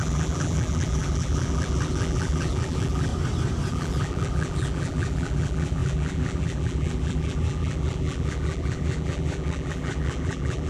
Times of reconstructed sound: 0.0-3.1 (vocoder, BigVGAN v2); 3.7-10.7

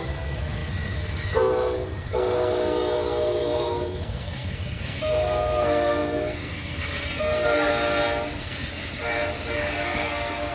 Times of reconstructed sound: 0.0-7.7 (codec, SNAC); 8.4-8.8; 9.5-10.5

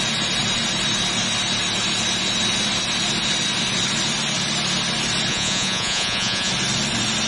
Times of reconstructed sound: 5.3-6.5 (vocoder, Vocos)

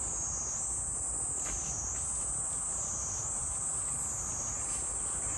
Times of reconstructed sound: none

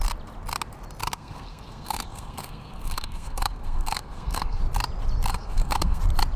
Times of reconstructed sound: 1.0-4.6 (codec, SNAC); 5.3-6.0

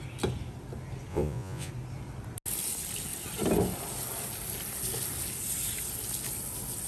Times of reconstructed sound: 1.1-1.7 (vocoder, Vocos)